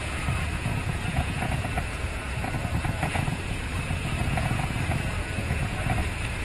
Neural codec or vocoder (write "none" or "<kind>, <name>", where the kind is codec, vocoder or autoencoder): vocoder, Vocos